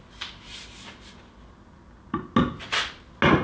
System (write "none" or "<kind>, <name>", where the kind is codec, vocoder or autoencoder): none